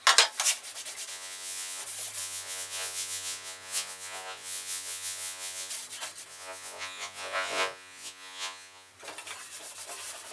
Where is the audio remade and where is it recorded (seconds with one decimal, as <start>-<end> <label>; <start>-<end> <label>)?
0.0-1.1 recorded; 1.1-1.8 remade; 1.8-2.2 recorded; 2.2-5.7 remade; 5.7-6.3 recorded; 6.3-8.9 remade; 8.9-10.3 recorded